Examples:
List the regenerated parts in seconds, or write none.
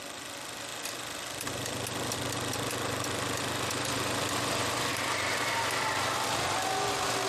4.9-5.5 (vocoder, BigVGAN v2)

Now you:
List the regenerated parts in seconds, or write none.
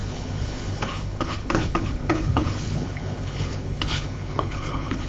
0.0-5.1 (codec, HILCodec)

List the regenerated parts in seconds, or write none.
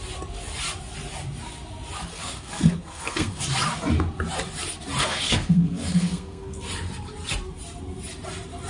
2.1-3.4 (codec, SNAC); 5.0-6.6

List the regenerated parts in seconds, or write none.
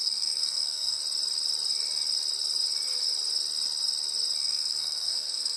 0.0-1.0 (codec, SNAC); 4.4-5.6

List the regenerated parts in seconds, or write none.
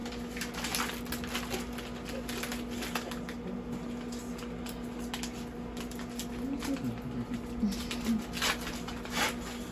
none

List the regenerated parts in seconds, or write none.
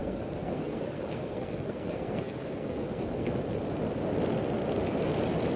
0.0-3.4 (codec, SNAC)